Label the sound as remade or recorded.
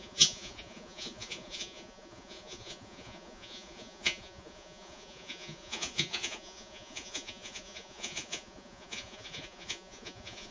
remade